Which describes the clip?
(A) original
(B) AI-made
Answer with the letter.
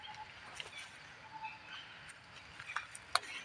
A